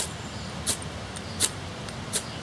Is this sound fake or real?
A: fake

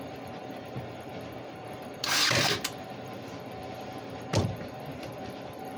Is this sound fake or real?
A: fake